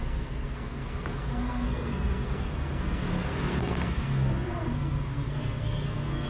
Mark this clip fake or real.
fake